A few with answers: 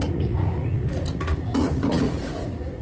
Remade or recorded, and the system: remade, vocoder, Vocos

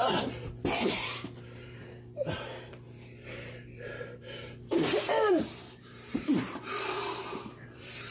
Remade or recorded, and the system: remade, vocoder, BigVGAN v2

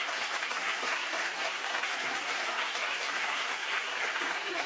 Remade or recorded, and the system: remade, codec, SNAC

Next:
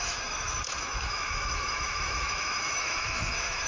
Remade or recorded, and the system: remade, autoencoder, DAC-VAE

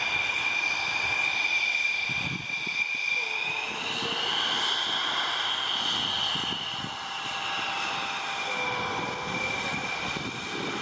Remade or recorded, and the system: recorded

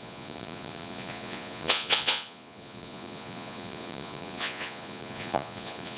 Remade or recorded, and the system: remade, vocoder, Vocos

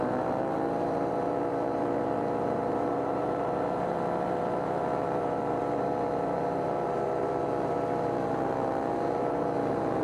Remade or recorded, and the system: remade, vocoder, BigVGAN v2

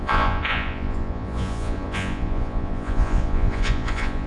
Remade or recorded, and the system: remade, vocoder, Vocos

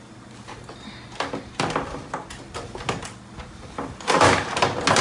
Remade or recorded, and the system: recorded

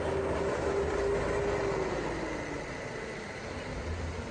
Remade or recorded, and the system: recorded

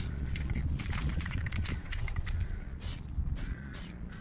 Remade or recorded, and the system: remade, vocoder, Vocos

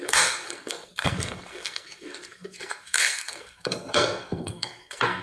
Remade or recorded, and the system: remade, codec, SNAC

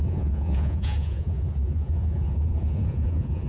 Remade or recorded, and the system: remade, vocoder, Vocos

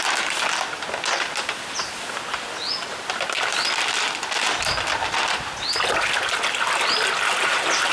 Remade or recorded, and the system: recorded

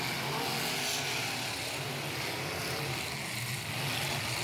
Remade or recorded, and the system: recorded